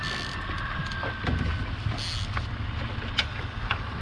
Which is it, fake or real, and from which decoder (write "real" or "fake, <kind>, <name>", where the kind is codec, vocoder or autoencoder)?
real